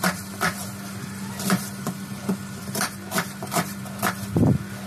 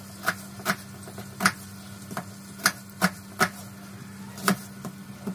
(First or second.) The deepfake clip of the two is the first